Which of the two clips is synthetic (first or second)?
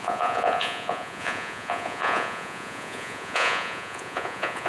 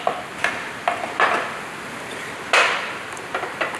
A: first